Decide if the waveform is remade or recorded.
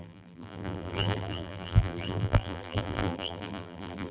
remade